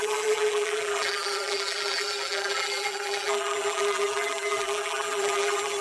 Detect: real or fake fake